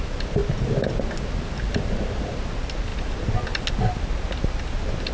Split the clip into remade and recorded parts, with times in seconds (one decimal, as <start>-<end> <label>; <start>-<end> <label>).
0.0-5.1 recorded